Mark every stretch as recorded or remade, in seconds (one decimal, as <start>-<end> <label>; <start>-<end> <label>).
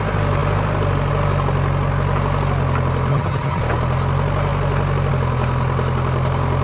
0.0-3.1 recorded; 3.1-3.6 remade; 3.6-6.6 recorded